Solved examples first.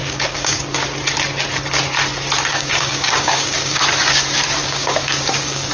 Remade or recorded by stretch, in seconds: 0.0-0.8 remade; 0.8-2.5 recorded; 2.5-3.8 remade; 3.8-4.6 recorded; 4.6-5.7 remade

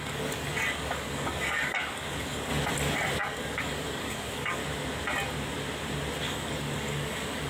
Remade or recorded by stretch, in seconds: 0.0-2.5 remade; 2.5-3.2 recorded; 3.2-4.6 remade; 4.6-6.2 recorded; 6.2-7.5 remade

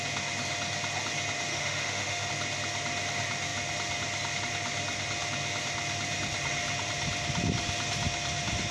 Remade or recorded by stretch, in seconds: 0.0-1.5 recorded; 1.5-2.3 remade; 2.3-8.7 recorded

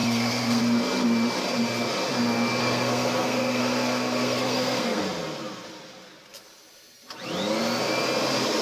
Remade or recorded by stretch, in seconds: 0.0-0.6 remade; 0.6-2.6 recorded; 2.6-5.0 remade; 5.0-8.6 recorded

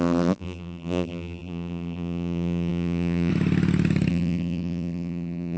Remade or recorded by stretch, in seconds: 0.0-3.3 remade; 3.3-4.1 recorded; 4.1-5.6 remade